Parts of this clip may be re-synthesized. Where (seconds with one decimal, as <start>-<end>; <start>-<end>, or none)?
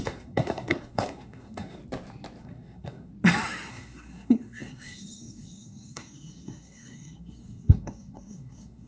0.0-1.8; 2.4-3.1; 3.7-8.9